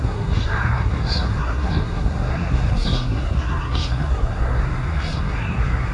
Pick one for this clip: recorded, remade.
remade